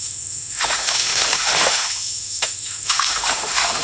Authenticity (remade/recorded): remade